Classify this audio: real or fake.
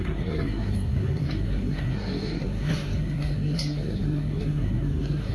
fake